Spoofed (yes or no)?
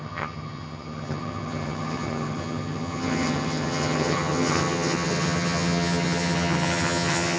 yes